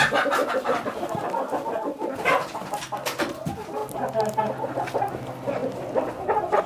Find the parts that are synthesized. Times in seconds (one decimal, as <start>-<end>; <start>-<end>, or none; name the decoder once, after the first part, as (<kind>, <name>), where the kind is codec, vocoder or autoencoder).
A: 5.6-6.1 (vocoder, BigVGAN v2)